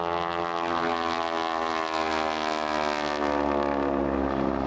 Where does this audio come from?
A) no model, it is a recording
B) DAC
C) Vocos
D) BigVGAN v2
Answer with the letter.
A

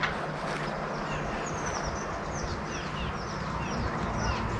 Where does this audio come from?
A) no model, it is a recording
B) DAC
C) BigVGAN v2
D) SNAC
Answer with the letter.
A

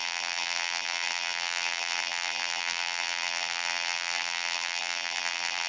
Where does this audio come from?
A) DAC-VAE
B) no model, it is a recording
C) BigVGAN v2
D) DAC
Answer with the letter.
C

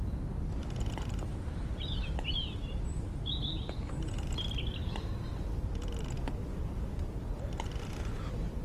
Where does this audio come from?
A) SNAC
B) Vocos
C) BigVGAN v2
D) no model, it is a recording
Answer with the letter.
D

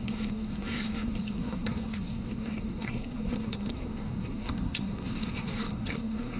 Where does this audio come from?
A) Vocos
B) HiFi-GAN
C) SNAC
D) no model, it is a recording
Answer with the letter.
C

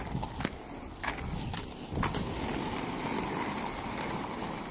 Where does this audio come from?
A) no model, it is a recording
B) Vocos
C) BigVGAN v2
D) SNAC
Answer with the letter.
A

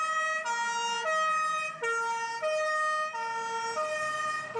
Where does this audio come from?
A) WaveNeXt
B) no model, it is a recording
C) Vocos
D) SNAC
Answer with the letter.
B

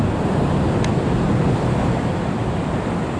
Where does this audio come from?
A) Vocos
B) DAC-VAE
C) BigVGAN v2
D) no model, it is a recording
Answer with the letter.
D